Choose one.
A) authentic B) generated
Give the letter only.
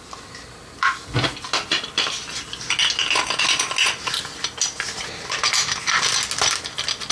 A